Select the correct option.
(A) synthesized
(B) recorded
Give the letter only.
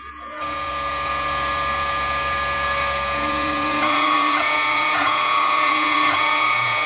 A